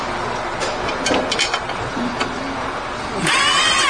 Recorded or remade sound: recorded